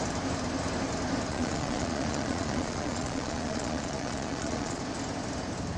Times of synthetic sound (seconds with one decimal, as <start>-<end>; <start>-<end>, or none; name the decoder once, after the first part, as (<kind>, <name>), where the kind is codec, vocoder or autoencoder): 1.3-4.8 (vocoder, Vocos)